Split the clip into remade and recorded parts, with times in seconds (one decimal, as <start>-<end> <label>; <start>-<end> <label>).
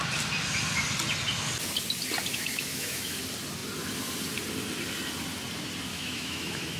0.0-2.3 recorded; 2.3-3.2 remade; 3.2-5.9 recorded; 5.9-6.8 remade